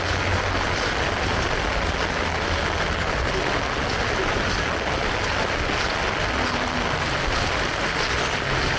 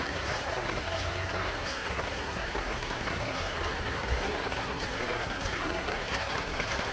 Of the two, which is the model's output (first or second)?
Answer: second